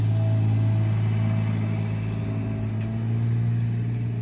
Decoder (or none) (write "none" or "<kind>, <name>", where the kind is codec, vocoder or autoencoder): none